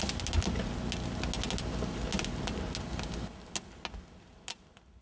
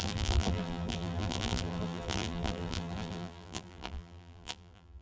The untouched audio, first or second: first